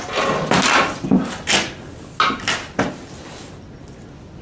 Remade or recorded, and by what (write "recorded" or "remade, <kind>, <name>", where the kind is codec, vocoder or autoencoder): recorded